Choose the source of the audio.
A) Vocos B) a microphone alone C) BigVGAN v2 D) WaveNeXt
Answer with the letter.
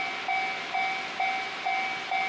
B